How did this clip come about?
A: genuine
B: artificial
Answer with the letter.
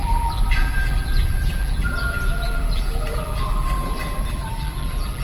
B